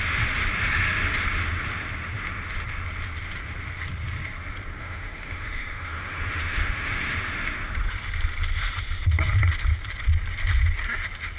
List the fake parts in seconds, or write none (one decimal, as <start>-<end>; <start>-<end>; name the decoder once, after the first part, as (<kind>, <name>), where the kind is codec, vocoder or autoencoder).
4.8-7.0 (autoencoder, DAC-VAE)